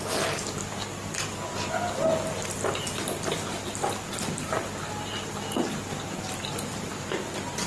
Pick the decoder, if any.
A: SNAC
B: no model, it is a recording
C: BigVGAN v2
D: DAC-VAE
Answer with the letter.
B